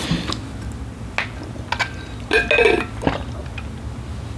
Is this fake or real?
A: real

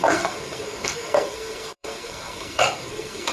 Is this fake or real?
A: fake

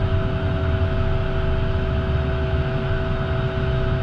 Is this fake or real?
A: real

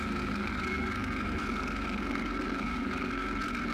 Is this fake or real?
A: fake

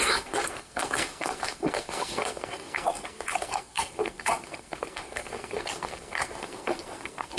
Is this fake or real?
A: fake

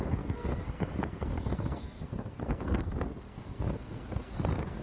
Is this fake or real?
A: fake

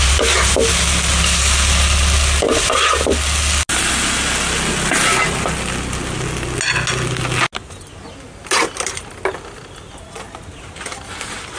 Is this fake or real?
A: real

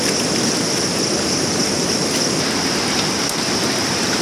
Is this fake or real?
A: real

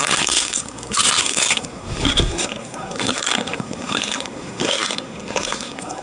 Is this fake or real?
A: fake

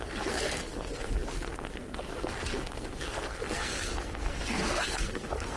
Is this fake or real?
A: fake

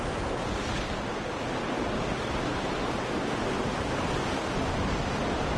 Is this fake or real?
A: real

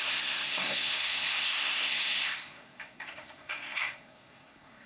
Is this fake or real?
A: fake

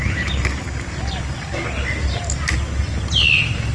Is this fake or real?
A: real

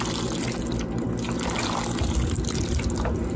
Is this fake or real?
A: real